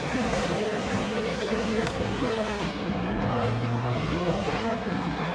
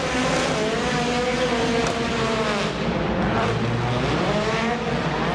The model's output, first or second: first